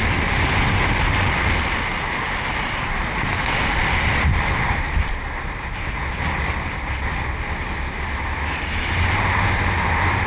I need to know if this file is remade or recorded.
recorded